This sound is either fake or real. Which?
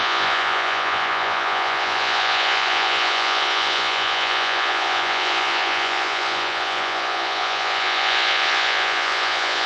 fake